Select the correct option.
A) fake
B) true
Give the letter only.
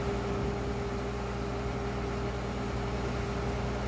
B